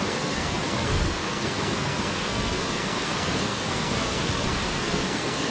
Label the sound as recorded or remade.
remade